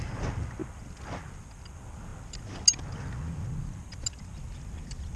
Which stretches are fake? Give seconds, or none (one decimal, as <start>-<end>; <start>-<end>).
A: none